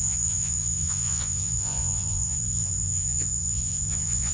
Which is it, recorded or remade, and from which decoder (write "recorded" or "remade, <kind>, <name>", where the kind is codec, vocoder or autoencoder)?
remade, vocoder, Vocos